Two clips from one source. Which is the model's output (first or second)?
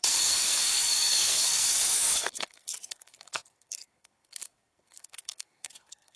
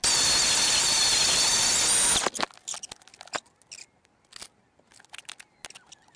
first